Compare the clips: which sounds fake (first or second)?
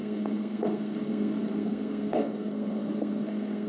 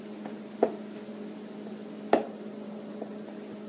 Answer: first